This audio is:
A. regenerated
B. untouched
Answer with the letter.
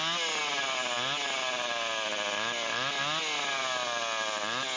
B